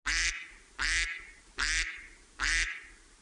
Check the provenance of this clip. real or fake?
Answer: real